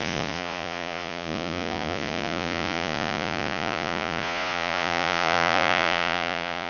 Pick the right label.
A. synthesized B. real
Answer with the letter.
A